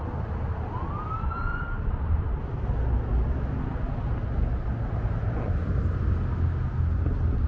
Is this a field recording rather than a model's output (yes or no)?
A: yes